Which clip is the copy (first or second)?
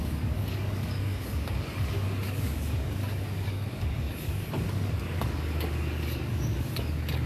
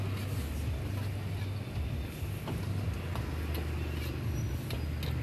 first